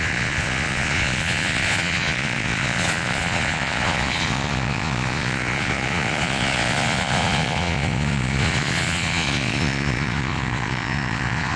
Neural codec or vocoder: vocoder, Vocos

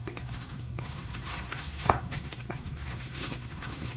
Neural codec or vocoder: codec, SNAC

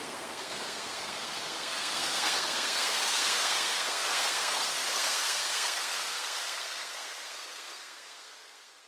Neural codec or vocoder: codec, SNAC